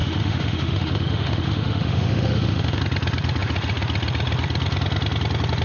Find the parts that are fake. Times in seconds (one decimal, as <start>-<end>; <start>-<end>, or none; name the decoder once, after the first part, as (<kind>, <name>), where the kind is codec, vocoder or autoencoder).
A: 0.0-2.8 (autoencoder, DAC-VAE)

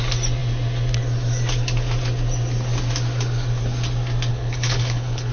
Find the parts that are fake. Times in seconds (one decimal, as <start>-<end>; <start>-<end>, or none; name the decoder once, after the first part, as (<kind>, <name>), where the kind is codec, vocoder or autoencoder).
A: 4.3-5.3 (codec, HILCodec)